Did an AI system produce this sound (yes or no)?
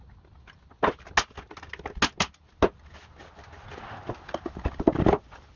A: no